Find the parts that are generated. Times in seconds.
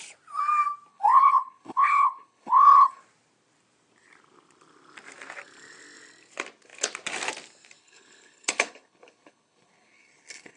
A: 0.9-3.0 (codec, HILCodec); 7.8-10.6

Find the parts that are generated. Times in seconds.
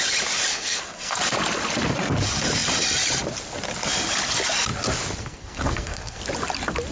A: 0.5-1.2 (codec, SNAC); 5.2-6.2